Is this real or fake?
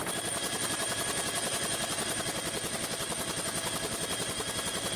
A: real